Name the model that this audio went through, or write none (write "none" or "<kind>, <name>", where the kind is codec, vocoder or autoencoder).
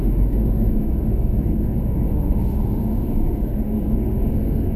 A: autoencoder, DAC-VAE